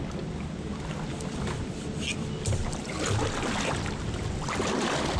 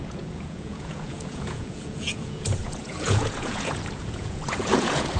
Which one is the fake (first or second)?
second